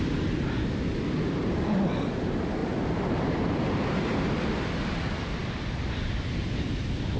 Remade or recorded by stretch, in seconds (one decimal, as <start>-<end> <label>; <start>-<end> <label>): 0.0-2.6 recorded; 2.6-4.2 remade; 4.2-7.2 recorded